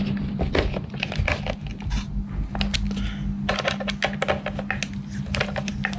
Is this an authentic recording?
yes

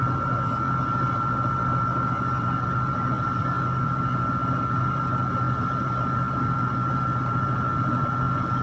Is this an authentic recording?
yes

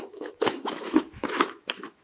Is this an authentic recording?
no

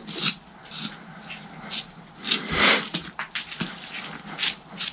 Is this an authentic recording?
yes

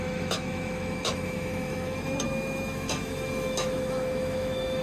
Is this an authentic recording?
no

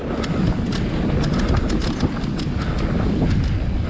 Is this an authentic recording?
yes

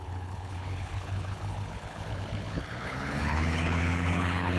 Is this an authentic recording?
no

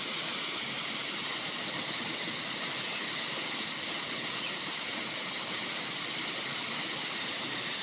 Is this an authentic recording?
yes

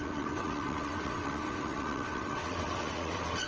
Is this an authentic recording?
no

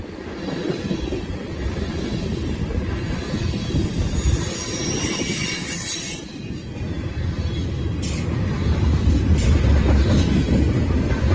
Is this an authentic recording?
yes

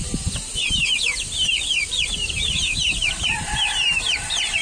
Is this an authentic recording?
no